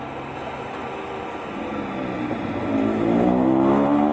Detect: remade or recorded recorded